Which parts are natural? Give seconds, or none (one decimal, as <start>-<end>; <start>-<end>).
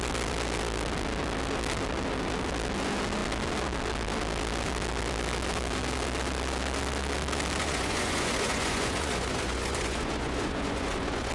0.0-7.6